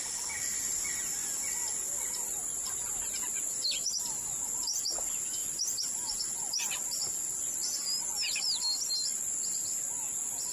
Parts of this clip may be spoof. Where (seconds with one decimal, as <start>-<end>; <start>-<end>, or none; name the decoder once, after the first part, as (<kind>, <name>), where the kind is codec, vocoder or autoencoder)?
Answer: none